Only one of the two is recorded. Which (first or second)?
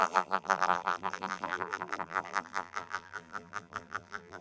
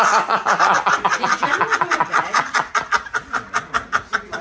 second